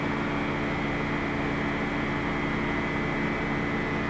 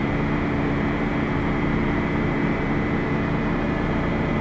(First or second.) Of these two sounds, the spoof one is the second